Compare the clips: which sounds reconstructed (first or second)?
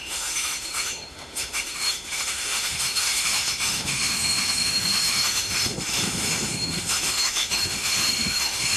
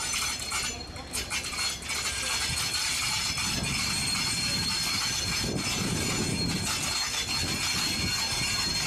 first